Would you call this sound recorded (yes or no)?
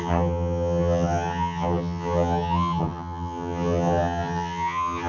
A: no